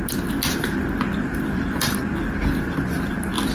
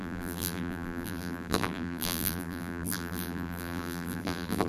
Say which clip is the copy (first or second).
second